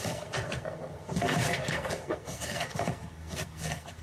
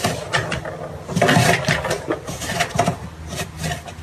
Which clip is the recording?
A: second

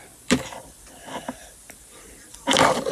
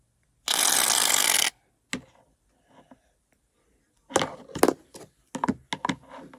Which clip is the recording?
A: second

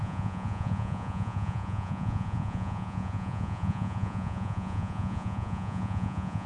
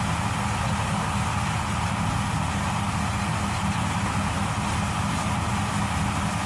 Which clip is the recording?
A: second